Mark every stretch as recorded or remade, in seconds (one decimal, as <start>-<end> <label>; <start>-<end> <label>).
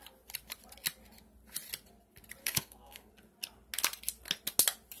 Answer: 0.0-2.4 recorded; 2.4-3.1 remade; 3.1-5.0 recorded